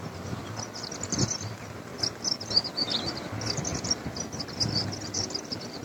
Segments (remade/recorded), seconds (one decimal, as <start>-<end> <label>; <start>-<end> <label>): 0.0-5.8 recorded